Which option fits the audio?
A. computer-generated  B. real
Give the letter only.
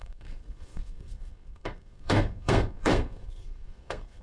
A